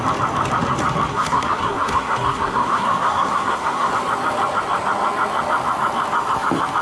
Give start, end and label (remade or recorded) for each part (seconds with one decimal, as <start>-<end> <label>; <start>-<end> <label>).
0.0-1.1 recorded; 1.1-3.9 remade; 3.9-6.8 recorded